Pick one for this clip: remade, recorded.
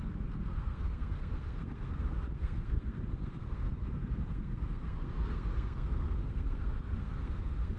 remade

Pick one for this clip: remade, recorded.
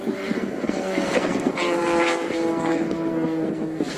remade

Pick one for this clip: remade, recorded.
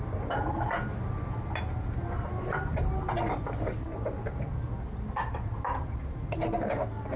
recorded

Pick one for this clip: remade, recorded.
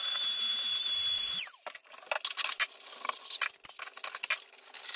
recorded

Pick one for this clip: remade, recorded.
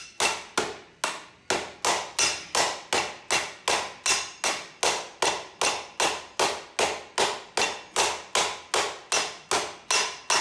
recorded